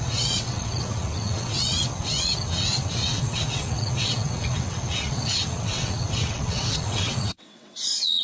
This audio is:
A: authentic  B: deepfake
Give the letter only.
B